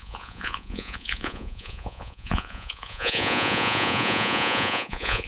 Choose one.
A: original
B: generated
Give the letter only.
B